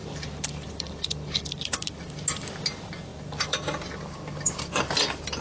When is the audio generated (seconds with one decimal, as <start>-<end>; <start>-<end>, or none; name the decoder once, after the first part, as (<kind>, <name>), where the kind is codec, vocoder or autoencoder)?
0.0-1.5 (vocoder, BigVGAN v2); 3.1-4.9